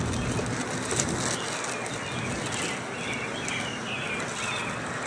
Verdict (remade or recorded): recorded